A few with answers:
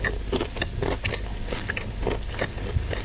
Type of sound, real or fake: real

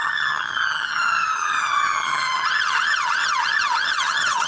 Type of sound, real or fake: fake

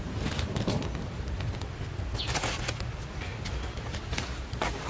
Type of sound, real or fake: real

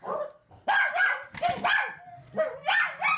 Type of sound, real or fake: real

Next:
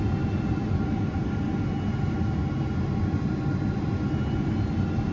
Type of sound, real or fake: real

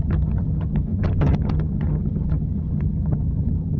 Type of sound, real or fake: fake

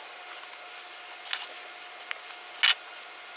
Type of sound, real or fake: real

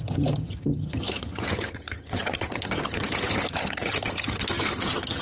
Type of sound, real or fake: fake